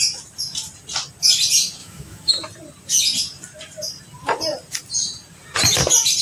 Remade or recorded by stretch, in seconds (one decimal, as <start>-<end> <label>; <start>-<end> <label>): 0.0-1.8 recorded; 1.8-2.3 remade; 2.3-6.2 recorded